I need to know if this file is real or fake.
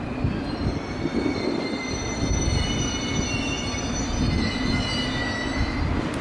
real